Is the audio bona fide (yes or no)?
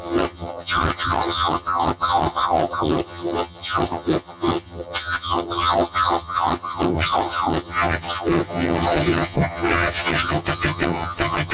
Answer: no